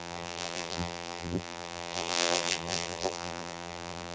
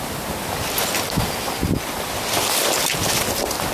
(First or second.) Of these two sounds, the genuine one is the second